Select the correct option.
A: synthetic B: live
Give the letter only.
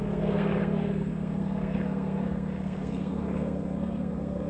A